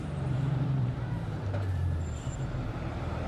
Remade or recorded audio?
remade